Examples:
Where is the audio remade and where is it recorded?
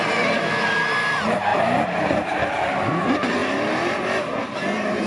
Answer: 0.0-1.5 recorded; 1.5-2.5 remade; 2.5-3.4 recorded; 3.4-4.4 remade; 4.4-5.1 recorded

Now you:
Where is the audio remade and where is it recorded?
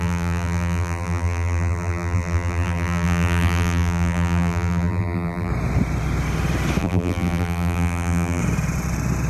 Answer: 0.0-5.5 remade; 5.5-6.8 recorded; 6.8-8.4 remade; 8.4-9.3 recorded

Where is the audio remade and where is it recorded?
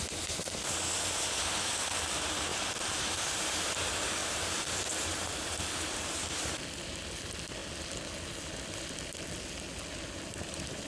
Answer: 0.0-2.5 recorded; 2.5-3.7 remade; 3.7-4.2 recorded; 4.2-5.3 remade; 5.3-10.9 recorded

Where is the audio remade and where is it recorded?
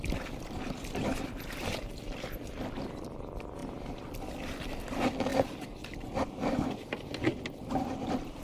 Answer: 0.0-8.4 recorded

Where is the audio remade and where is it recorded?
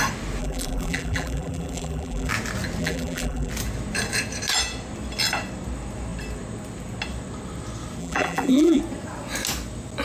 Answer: 0.0-0.4 recorded; 0.4-2.3 remade; 2.3-2.8 recorded; 2.8-3.5 remade; 3.5-8.0 recorded; 8.0-8.8 remade; 8.8-10.0 recorded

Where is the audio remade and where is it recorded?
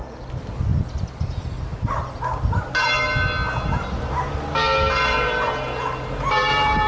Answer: 0.0-6.9 recorded